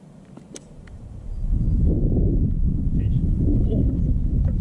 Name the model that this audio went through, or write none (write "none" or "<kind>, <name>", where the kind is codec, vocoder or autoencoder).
vocoder, BigVGAN v2